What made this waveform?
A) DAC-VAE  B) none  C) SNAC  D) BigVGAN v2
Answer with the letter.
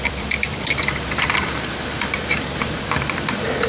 D